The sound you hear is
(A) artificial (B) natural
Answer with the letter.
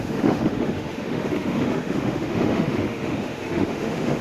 A